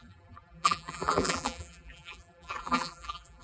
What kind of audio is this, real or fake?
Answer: fake